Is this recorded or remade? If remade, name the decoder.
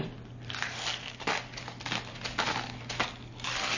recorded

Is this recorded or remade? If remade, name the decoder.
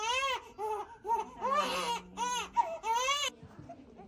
recorded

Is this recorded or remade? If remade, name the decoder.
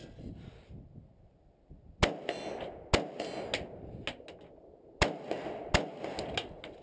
recorded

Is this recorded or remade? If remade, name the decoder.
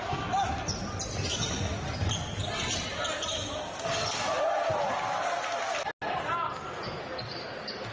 recorded